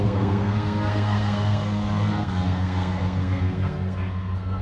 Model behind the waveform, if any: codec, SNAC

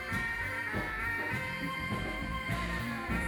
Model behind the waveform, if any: vocoder, BigVGAN v2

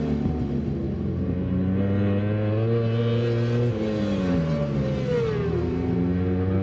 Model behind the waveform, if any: none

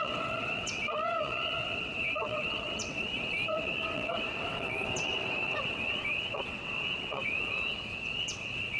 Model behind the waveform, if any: vocoder, WaveNeXt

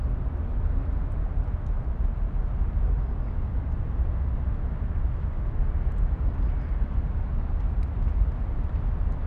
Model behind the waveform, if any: none